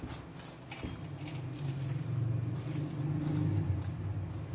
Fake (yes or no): no